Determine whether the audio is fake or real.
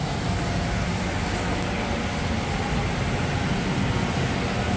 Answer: real